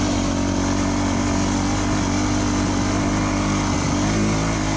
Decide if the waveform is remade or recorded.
recorded